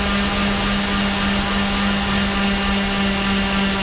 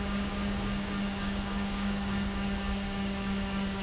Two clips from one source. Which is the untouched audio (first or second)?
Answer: first